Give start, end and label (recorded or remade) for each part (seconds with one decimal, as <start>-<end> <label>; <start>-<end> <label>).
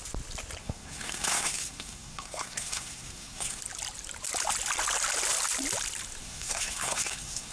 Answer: 0.0-0.6 recorded; 0.6-3.6 remade; 3.6-6.2 recorded; 6.2-7.5 remade